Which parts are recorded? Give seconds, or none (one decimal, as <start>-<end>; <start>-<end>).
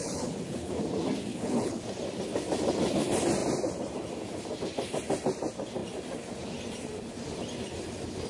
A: 0.7-1.3; 1.8-8.3